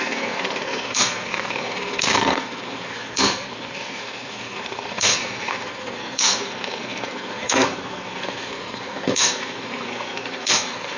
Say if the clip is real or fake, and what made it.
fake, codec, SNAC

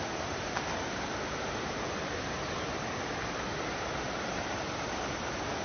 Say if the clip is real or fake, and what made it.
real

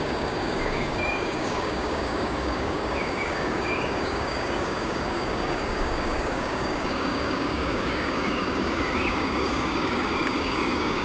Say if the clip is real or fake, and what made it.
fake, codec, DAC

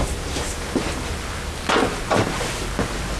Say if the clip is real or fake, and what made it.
real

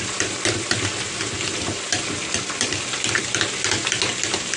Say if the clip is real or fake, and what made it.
real